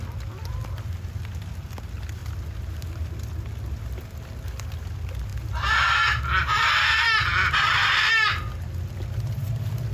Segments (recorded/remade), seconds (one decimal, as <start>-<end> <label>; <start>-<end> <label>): 0.0-9.9 recorded